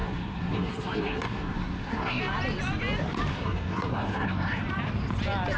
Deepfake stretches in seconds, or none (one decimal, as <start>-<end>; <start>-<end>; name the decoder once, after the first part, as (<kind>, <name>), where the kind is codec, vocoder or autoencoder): 0.0-2.2 (codec, SNAC); 3.3-4.6

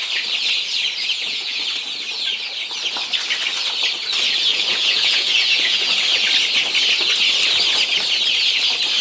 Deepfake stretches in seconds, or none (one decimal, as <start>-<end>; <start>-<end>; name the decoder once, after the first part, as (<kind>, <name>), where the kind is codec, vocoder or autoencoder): 1.1-1.6 (vocoder, Vocos); 4.5-6.0